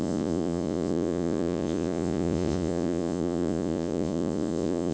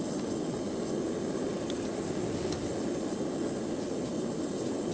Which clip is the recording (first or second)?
second